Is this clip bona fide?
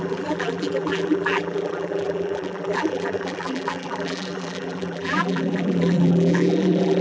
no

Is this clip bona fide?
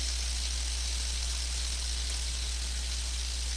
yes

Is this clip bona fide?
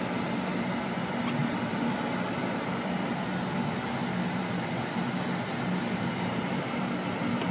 yes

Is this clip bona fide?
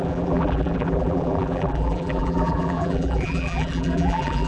no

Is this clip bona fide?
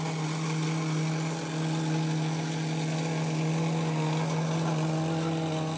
yes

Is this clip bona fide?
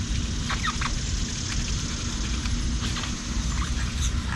yes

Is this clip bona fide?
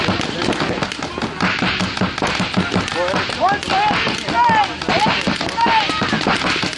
yes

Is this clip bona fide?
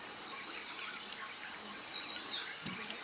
no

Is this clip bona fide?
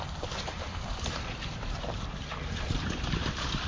no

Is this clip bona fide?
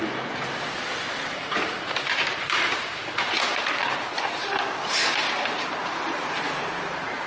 no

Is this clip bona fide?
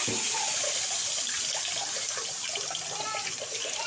yes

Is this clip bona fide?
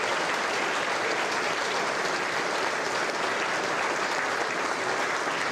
yes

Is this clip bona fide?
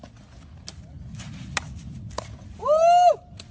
yes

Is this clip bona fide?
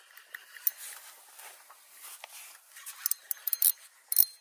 yes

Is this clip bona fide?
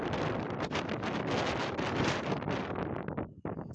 no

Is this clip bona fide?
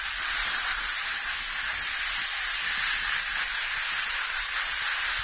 yes